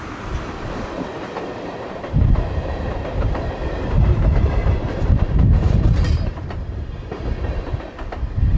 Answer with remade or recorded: remade